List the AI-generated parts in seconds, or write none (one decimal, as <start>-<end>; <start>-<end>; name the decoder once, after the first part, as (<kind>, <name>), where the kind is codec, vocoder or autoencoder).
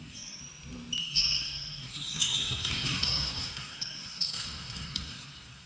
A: 0.0-0.4 (codec, SNAC); 1.0-5.7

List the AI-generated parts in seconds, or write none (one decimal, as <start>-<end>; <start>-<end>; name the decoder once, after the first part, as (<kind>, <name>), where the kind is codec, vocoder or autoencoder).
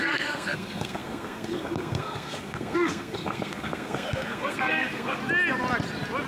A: 0.0-5.2 (codec, SNAC)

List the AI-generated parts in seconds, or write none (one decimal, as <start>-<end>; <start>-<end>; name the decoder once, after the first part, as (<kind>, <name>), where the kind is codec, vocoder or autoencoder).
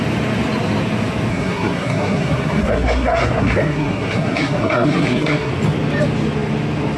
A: 1.3-5.5 (codec, SNAC)